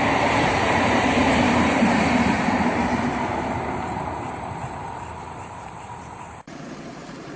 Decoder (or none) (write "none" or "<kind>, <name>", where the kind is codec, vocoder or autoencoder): vocoder, BigVGAN v2